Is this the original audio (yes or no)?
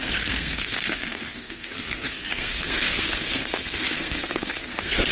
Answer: no